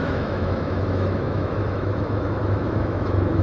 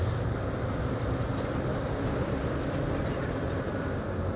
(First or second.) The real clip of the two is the second